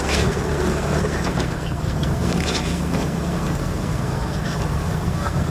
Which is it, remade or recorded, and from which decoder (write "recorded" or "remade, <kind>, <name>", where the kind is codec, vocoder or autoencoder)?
remade, codec, SNAC